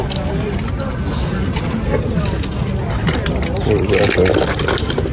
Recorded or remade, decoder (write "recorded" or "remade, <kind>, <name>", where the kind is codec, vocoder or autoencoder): recorded